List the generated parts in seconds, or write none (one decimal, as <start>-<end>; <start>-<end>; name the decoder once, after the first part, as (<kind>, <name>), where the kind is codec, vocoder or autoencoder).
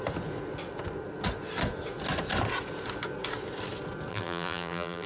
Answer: 4.1-5.1 (vocoder, BigVGAN v2)